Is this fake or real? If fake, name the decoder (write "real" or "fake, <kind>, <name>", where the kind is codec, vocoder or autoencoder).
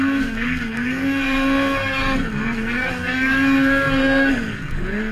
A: fake, codec, SNAC